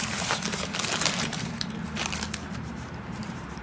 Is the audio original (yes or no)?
no